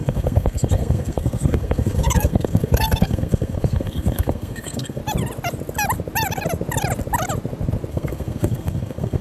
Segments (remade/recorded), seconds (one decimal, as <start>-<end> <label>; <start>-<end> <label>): 0.0-5.0 remade; 5.0-7.9 recorded; 7.9-9.2 remade